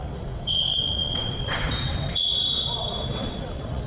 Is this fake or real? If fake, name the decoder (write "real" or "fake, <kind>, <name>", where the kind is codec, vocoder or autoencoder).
fake, vocoder, WaveNeXt